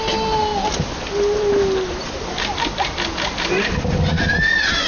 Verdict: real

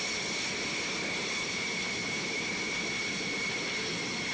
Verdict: real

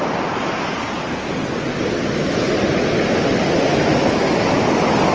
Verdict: real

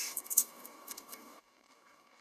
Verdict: fake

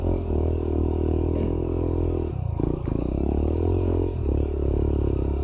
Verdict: fake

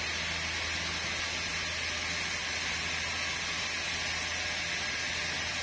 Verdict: real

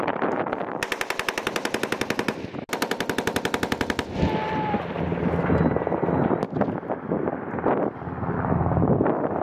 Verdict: real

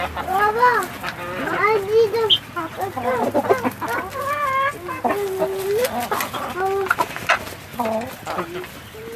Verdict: real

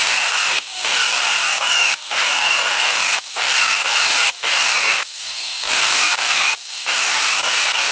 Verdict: fake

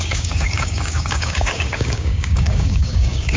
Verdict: fake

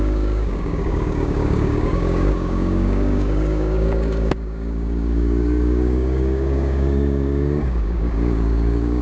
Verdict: fake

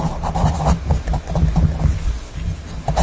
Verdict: real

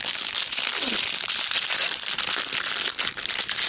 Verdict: real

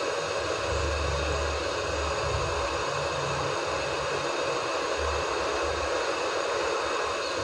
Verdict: real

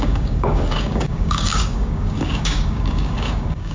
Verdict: fake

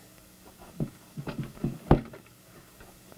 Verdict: fake